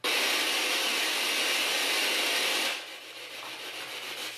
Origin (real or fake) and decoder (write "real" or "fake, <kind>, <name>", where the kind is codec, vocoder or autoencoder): real